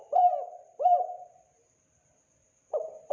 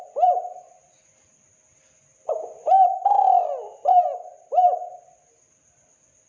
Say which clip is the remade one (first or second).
first